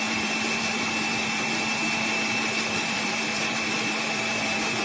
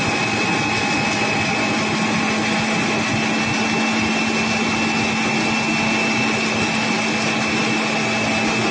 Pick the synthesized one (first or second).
first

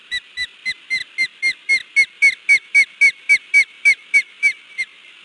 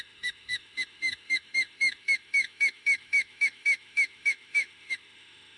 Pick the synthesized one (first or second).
second